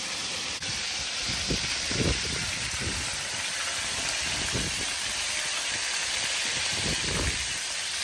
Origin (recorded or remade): recorded